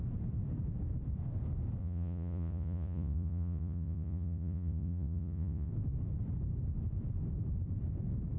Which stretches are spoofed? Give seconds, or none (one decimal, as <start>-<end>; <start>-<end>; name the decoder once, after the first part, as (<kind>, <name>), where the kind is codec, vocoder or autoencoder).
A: 1.8-5.7 (vocoder, Vocos)